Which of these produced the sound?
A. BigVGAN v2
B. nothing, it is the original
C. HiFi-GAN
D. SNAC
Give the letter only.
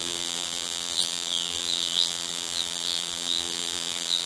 A